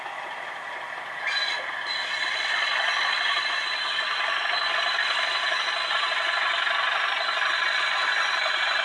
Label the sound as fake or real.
real